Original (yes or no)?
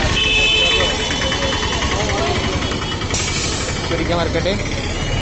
yes